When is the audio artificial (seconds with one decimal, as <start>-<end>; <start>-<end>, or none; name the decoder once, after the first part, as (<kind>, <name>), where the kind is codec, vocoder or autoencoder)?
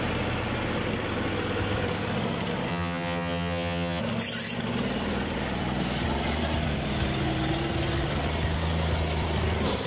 2.7-4.0 (vocoder, HiFi-GAN)